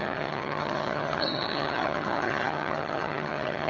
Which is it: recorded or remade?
remade